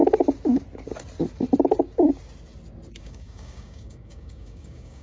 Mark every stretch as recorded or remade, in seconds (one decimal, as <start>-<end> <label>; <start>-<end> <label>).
0.0-3.0 recorded; 3.0-5.0 remade